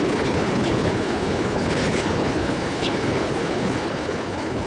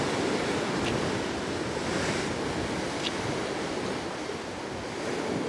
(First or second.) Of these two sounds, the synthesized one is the first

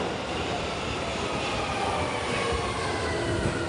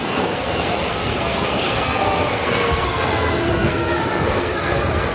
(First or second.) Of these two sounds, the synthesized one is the second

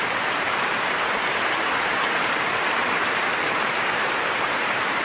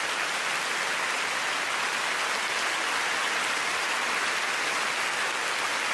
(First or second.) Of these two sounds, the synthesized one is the first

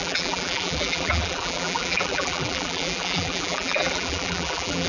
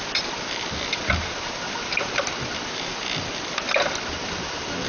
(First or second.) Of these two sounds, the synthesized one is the first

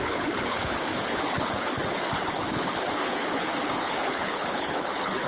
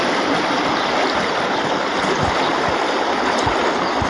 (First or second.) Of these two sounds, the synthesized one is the first